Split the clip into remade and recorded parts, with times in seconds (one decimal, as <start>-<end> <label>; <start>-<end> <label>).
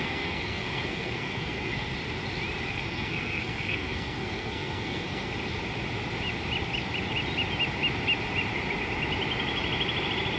0.0-1.9 remade; 1.9-2.7 recorded; 2.7-5.3 remade; 5.3-10.4 recorded